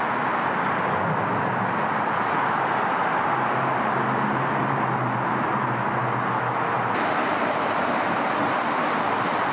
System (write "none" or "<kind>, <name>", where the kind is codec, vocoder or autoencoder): none